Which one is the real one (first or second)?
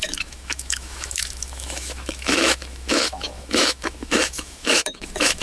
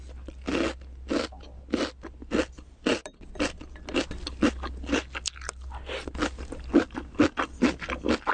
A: second